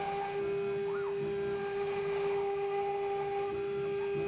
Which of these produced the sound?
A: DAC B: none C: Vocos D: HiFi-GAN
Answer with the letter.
B